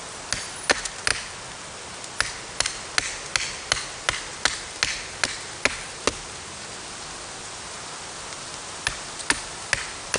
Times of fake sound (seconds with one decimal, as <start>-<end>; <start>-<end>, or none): none